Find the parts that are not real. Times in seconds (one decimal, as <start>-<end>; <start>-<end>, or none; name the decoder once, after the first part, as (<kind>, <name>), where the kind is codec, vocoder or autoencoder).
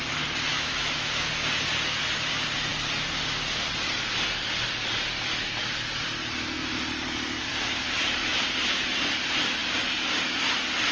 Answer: 0.5-1.3 (autoencoder, DAC-VAE); 7.5-8.4